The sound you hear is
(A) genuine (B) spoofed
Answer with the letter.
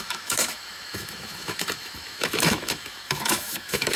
B